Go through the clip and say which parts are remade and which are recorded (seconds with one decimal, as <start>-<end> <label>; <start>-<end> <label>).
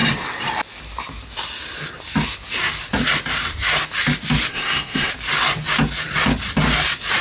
0.0-4.5 recorded; 4.5-5.1 remade; 5.1-7.2 recorded